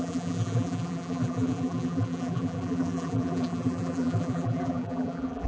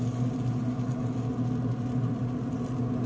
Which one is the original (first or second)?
second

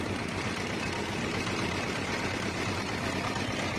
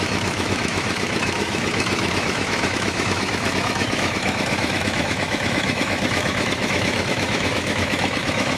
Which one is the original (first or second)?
first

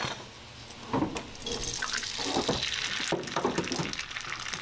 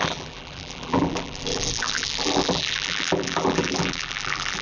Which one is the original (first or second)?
first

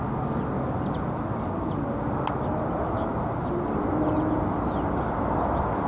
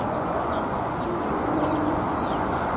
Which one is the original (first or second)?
first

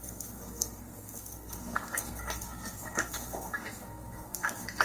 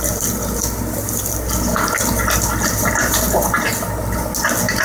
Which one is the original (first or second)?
second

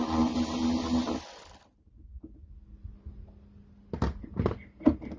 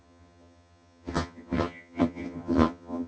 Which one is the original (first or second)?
first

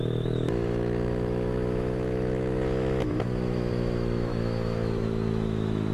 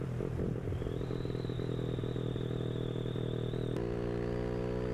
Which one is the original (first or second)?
second